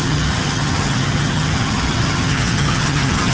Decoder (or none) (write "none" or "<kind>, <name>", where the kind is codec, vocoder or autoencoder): vocoder, HiFi-GAN